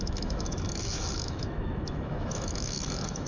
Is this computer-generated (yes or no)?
yes